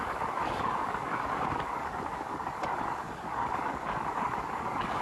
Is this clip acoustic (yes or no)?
no